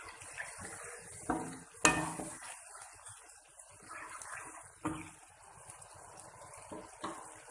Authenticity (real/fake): real